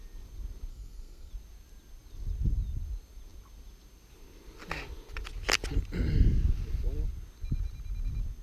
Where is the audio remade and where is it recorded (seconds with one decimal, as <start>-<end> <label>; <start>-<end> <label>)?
0.0-0.7 recorded; 0.7-1.3 remade; 1.3-8.4 recorded